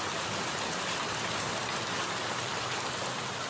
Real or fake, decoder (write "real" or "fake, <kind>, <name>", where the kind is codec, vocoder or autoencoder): real